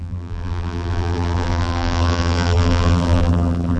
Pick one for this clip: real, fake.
fake